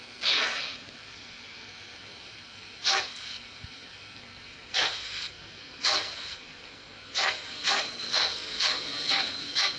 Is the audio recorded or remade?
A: remade